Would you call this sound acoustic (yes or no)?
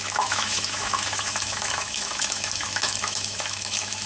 no